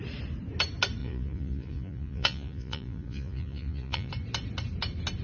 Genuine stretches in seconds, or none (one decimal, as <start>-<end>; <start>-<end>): 0.0-1.0; 4.1-5.2